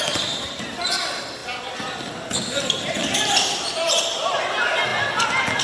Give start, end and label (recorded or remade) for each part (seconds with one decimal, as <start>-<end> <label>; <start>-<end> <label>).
0.0-5.6 recorded